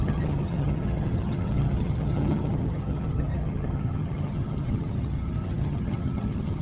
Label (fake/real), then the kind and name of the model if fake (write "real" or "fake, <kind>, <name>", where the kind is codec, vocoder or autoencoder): fake, vocoder, HiFi-GAN